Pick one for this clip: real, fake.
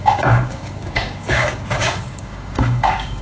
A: fake